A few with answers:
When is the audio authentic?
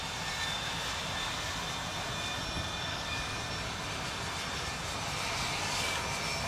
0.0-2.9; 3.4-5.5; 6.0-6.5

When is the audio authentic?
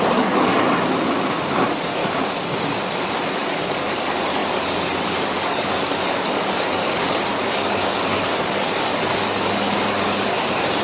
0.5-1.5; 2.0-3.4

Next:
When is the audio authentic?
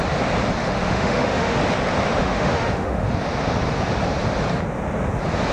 0.0-0.6; 1.6-2.2; 3.1-5.5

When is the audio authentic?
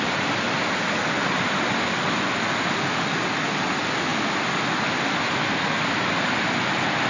0.0-7.1